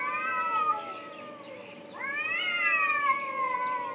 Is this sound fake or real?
real